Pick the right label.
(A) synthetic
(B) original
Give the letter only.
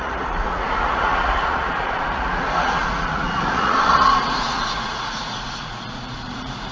A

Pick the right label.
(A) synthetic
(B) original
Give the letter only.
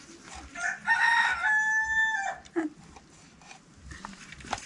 B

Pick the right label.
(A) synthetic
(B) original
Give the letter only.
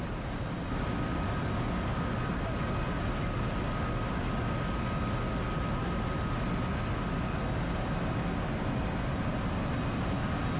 B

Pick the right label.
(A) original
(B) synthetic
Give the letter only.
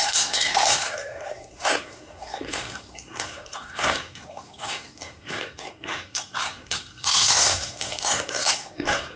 B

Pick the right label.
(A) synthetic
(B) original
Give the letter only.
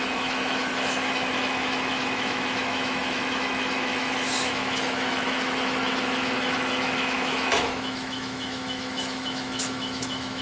A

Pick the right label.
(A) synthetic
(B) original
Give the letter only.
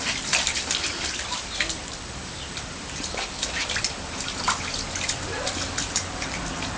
A